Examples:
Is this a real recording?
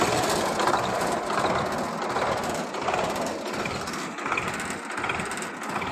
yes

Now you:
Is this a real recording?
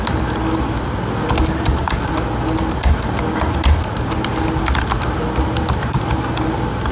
yes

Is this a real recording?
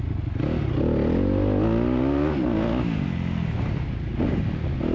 yes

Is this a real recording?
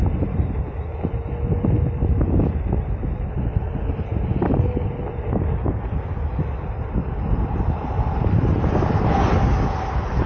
yes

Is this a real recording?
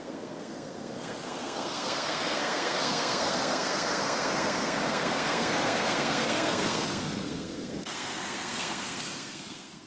no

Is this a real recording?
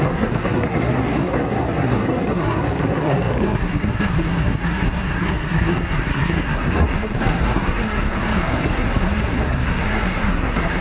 no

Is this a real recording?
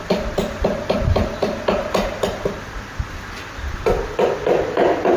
yes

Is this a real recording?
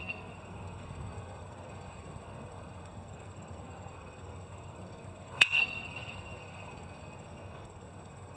no